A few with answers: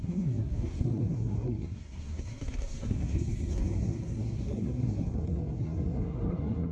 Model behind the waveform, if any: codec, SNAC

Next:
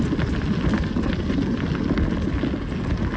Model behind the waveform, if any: none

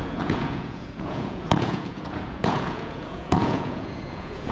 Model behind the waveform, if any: vocoder, Vocos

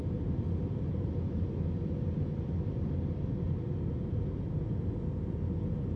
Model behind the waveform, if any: none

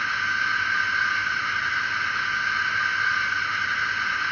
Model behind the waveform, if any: none